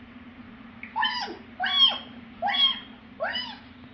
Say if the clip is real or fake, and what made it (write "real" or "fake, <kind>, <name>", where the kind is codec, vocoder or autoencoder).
real